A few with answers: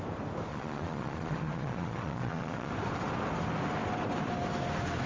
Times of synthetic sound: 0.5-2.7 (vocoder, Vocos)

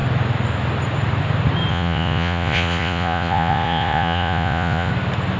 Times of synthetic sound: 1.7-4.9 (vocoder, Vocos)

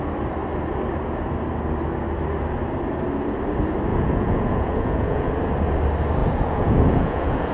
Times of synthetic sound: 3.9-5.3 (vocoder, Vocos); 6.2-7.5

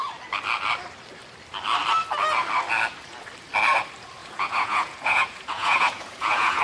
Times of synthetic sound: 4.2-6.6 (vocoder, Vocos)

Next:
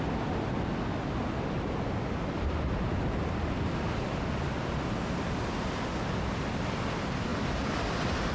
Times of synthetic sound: none

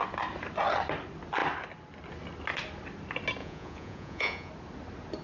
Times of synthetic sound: 3.4-4.5 (vocoder, Vocos)